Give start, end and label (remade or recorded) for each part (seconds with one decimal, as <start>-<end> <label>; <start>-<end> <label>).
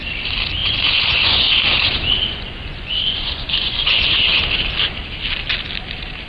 0.0-0.6 recorded; 0.6-4.4 remade; 4.4-6.3 recorded